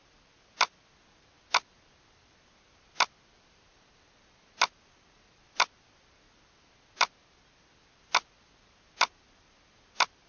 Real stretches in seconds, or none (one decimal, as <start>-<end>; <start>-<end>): 0.0-10.3